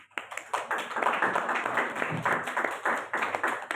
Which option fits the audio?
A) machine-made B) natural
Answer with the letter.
B